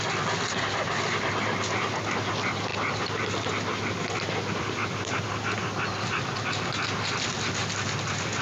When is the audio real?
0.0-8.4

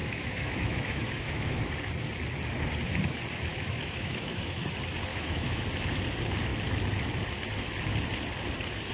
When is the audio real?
1.6-3.5; 4.6-5.1; 5.6-8.9

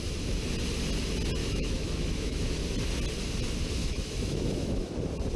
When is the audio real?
0.0-1.4; 2.6-3.8; 4.9-5.4